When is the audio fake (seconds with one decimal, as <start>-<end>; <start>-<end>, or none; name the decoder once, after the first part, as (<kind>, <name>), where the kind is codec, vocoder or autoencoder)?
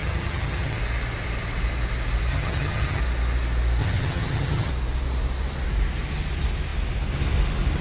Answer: 0.0-0.8 (vocoder, HiFi-GAN); 2.3-3.0; 3.8-4.7